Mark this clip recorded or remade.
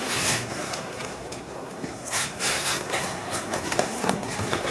remade